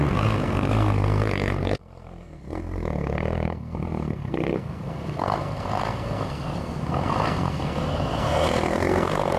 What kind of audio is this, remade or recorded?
remade